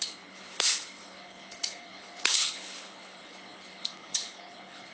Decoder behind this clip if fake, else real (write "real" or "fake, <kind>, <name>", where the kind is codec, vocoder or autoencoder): fake, codec, HILCodec